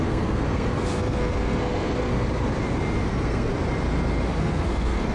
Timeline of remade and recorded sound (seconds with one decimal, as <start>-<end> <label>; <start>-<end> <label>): 0.0-2.1 remade; 2.1-3.1 recorded; 3.1-3.5 remade; 3.5-4.4 recorded; 4.4-5.1 remade